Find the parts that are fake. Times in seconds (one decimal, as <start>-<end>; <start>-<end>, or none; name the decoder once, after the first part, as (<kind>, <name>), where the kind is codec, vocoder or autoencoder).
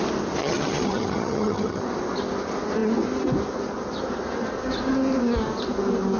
0.4-1.8 (vocoder, HiFi-GAN)